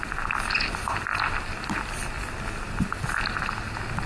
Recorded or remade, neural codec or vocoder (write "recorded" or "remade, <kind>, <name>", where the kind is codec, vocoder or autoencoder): recorded